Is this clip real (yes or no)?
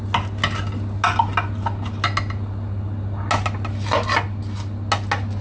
yes